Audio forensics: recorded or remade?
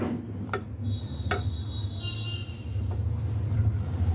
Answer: recorded